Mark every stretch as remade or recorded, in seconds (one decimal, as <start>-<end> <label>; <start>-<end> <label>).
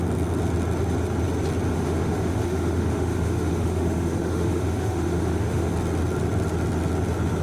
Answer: 0.0-1.7 recorded; 1.7-5.7 remade; 5.7-7.4 recorded